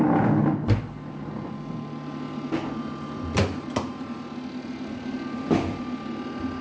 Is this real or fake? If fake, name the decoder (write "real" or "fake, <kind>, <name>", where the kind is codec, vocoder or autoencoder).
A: real